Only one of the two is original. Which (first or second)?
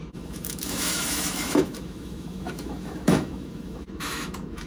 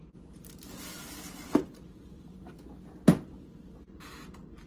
second